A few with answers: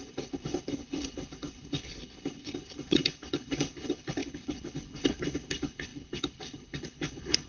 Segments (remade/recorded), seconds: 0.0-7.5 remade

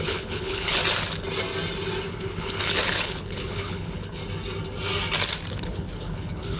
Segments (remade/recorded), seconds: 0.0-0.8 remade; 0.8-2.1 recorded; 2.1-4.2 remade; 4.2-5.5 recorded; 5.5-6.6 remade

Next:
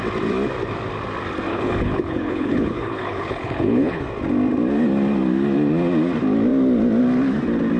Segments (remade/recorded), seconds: 0.0-1.5 recorded; 1.5-4.0 remade; 4.0-7.8 recorded